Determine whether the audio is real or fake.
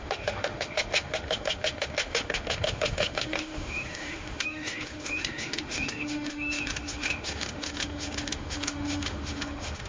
fake